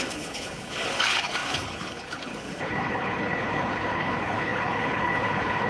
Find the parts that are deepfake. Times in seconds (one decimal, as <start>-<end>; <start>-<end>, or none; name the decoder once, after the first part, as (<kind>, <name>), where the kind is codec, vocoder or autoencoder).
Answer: 0.0-5.7 (codec, HILCodec)